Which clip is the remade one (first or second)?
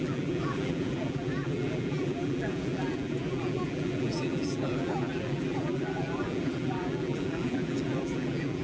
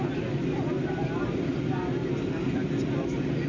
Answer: first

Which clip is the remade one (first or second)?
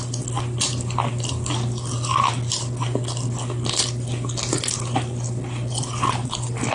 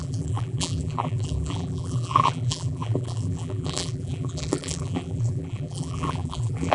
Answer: second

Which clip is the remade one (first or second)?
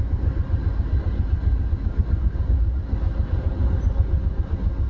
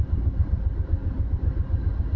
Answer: second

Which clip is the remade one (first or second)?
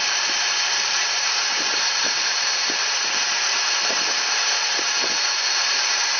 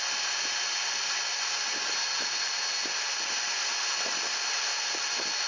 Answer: first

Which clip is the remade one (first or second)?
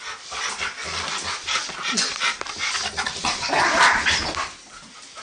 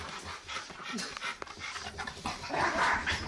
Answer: second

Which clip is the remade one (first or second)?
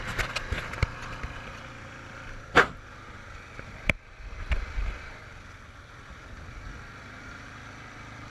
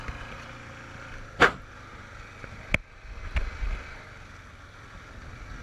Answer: first